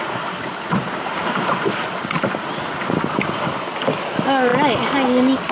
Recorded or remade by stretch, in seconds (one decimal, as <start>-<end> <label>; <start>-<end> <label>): 0.0-1.2 recorded; 1.2-1.9 remade; 1.9-5.5 recorded